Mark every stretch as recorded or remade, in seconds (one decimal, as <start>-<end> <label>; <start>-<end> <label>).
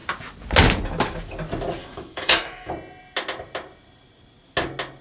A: 0.0-1.8 recorded; 1.8-2.7 remade; 2.7-5.0 recorded